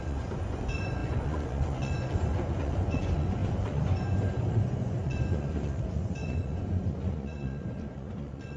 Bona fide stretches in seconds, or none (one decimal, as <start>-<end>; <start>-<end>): none